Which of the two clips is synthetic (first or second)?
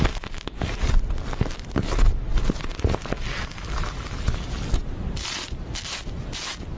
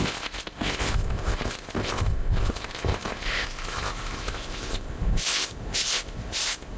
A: second